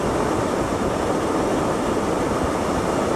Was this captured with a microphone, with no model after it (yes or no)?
yes